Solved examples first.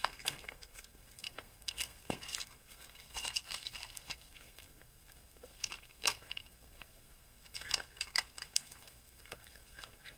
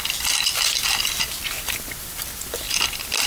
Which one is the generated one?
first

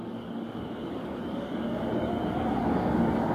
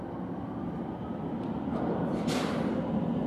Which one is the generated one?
first